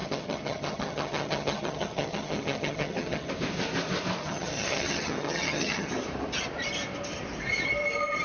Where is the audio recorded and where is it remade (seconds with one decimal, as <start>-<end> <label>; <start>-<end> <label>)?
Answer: 0.0-3.3 remade; 3.3-4.2 recorded; 4.2-5.9 remade; 5.9-8.2 recorded